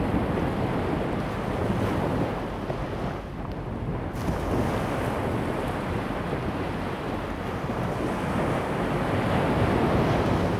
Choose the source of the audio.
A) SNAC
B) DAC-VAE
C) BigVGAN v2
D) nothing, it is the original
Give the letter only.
D